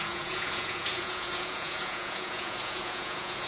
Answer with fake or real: fake